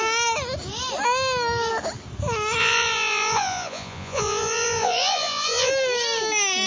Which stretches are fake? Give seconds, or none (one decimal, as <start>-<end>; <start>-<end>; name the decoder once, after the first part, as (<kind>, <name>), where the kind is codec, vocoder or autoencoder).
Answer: 2.6-5.7 (vocoder, Vocos)